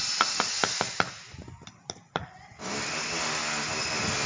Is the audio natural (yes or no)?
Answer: yes